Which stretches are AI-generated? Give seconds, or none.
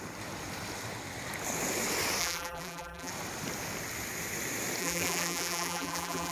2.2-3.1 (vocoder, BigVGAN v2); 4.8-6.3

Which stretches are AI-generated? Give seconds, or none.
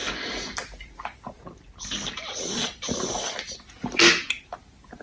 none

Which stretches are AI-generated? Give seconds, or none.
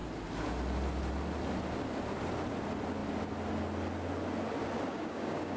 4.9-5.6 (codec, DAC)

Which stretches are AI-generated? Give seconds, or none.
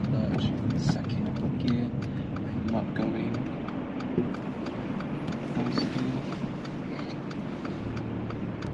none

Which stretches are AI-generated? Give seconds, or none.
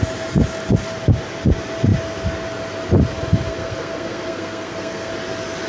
3.5-5.1 (codec, SNAC)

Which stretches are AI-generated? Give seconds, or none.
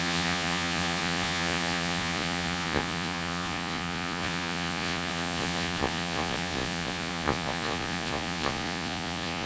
0.0-9.5 (vocoder, Vocos)